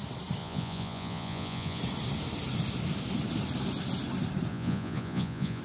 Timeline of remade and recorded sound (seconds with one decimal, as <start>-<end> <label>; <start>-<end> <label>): 0.0-0.4 recorded; 0.4-1.8 remade; 1.8-4.5 recorded; 4.5-5.6 remade